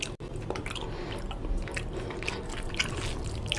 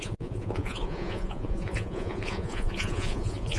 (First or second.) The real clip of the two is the first